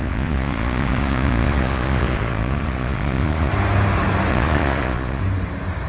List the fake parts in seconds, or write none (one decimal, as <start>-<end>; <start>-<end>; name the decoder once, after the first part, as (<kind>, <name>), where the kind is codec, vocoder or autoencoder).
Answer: 0.0-3.5 (vocoder, Vocos); 4.3-5.2